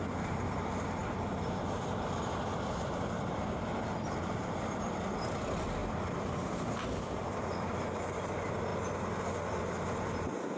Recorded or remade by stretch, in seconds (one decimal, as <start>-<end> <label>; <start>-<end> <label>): 0.0-1.0 recorded; 1.0-5.3 remade; 5.3-5.8 recorded; 5.8-7.4 remade; 7.4-10.6 recorded